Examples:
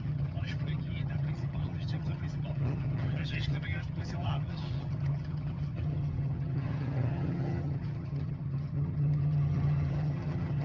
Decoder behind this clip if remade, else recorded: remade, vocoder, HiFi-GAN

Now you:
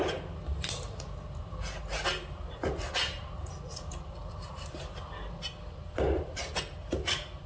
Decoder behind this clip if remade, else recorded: recorded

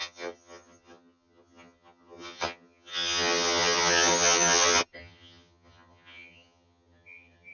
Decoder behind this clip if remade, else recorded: remade, vocoder, HiFi-GAN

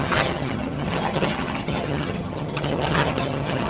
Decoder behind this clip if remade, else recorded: remade, vocoder, HiFi-GAN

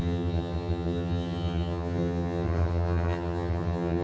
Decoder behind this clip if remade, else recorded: remade, vocoder, HiFi-GAN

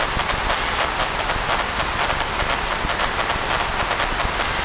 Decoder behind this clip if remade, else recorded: recorded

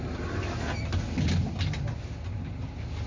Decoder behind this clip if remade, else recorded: recorded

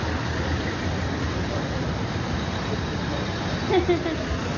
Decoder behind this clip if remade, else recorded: recorded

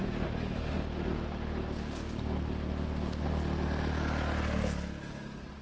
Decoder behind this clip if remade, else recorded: recorded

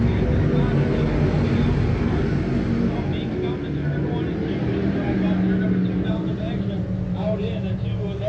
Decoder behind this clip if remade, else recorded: recorded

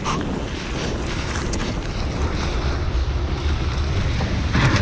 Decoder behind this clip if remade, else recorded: recorded